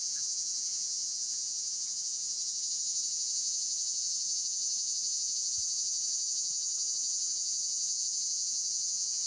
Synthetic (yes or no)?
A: yes